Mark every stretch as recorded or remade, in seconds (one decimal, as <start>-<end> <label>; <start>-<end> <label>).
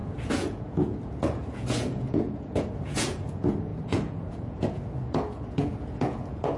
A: 0.0-6.6 remade